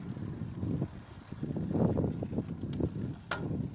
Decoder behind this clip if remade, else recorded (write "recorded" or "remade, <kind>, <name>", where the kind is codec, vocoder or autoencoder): recorded